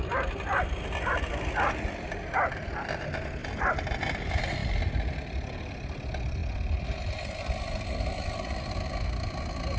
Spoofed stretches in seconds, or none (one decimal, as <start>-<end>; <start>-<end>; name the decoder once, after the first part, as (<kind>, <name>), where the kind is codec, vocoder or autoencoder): none